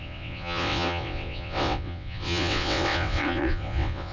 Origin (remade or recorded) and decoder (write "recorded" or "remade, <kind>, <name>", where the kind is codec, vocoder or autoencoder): remade, vocoder, WaveNeXt